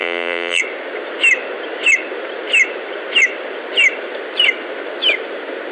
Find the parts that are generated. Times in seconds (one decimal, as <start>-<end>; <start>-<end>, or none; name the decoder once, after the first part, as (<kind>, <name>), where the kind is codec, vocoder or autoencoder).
0.0-0.6 (vocoder, BigVGAN v2)